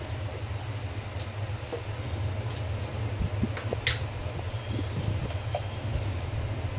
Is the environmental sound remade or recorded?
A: recorded